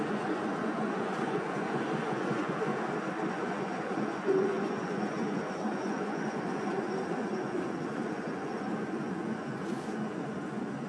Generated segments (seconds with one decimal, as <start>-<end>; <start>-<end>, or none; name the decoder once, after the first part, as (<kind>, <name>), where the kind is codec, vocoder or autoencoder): 0.0-2.7 (vocoder, Vocos); 3.3-10.9

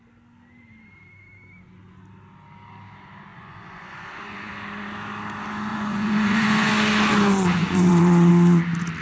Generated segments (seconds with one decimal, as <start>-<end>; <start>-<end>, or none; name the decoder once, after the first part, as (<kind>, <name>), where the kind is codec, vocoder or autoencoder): 3.3-4.5 (vocoder, Vocos); 5.7-6.7; 7.6-8.3

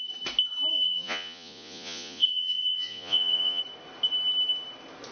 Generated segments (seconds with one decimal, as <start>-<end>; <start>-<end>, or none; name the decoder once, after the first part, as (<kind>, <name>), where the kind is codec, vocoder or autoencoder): 0.7-3.6 (vocoder, Vocos)

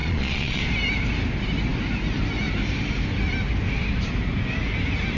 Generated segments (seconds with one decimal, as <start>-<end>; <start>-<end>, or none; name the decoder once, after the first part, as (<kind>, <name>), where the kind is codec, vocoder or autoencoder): 0.0-0.6 (vocoder, Vocos)

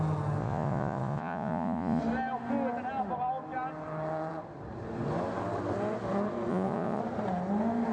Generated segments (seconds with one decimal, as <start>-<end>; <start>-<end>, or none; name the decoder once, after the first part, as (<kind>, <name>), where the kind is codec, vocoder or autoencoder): 0.4-2.0 (vocoder, Vocos); 6.5-7.0

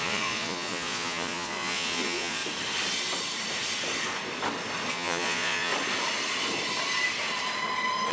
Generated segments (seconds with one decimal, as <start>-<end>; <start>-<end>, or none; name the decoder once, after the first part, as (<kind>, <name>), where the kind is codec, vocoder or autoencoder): 0.0-2.4 (vocoder, Vocos); 4.9-5.7